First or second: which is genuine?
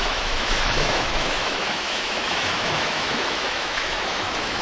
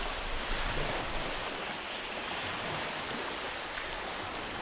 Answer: second